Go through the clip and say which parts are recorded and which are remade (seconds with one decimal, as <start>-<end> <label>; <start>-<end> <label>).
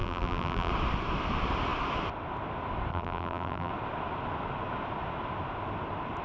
0.0-0.7 remade; 0.7-2.9 recorded; 2.9-3.7 remade; 3.7-6.2 recorded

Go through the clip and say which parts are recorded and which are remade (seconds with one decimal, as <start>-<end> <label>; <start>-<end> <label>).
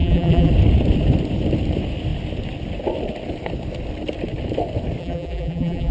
0.0-0.5 remade; 0.5-5.0 recorded; 5.0-5.9 remade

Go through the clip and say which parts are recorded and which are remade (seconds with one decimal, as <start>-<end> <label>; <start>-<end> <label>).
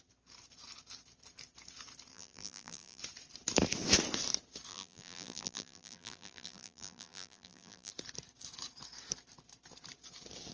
0.0-2.1 recorded; 2.1-3.0 remade; 3.0-4.7 recorded; 4.7-7.9 remade; 7.9-10.5 recorded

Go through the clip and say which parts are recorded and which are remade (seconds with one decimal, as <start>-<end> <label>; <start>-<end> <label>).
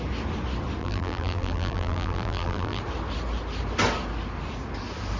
0.0-0.8 recorded; 0.8-2.8 remade; 2.8-5.2 recorded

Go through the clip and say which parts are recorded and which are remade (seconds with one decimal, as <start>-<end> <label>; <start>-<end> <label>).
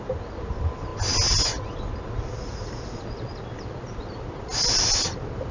0.0-5.5 recorded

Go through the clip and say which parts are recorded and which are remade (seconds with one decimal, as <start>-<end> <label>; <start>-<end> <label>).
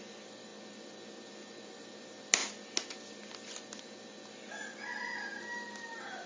0.0-6.3 recorded